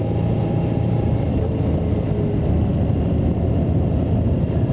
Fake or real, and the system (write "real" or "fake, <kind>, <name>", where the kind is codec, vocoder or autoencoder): real